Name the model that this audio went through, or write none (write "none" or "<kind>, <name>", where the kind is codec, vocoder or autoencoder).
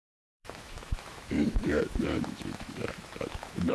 autoencoder, DAC-VAE